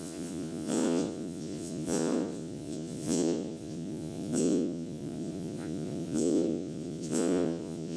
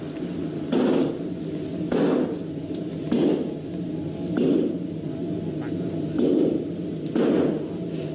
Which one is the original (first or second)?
second